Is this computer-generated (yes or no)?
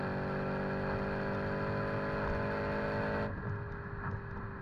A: no